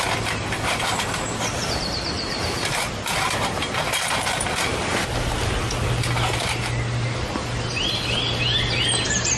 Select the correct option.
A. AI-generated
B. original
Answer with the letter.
A